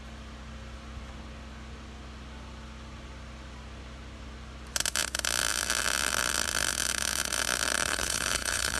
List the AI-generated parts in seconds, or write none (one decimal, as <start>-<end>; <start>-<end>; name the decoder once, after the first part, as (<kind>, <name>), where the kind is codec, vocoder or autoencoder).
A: 7.9-8.8 (codec, HILCodec)